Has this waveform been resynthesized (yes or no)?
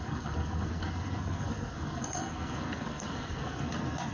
yes